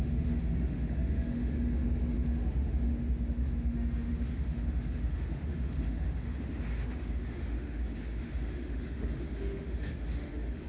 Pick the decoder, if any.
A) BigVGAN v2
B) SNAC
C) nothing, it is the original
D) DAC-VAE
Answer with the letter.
D